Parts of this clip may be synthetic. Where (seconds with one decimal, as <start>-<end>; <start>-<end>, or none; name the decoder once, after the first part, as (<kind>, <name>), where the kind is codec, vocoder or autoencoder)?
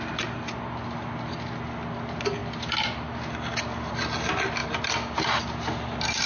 none